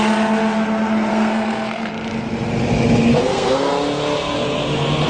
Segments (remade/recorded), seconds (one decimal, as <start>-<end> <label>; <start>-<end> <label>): 0.0-1.1 recorded; 1.1-1.9 remade; 1.9-3.1 recorded; 3.1-3.7 remade; 3.7-5.1 recorded